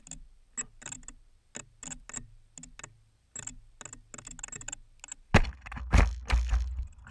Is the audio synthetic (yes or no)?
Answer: no